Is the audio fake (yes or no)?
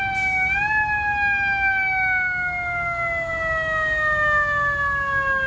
no